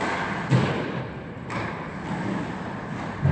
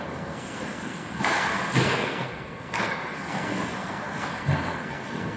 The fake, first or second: second